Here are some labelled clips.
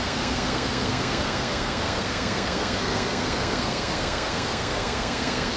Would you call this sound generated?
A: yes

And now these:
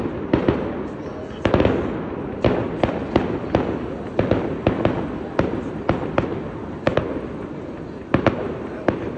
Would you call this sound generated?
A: no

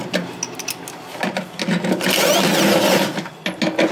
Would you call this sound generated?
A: no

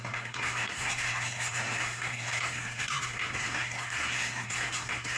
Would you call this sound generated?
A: yes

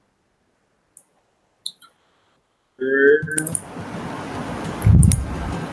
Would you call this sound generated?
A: no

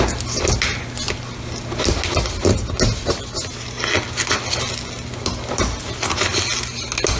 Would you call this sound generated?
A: no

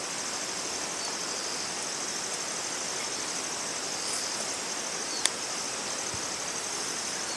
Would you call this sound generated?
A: no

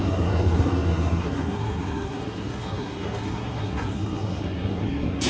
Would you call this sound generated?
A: yes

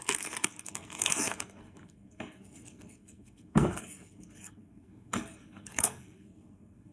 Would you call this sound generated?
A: yes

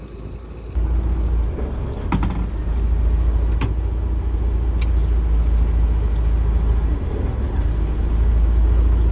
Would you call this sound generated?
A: no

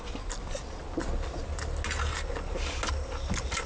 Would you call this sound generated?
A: no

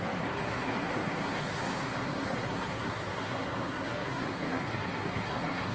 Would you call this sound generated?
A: yes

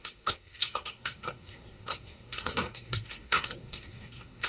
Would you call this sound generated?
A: yes